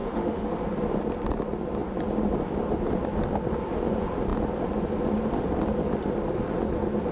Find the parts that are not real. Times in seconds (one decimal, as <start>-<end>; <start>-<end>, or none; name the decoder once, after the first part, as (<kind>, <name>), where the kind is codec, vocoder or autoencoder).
0.0-0.6 (autoencoder, DAC-VAE)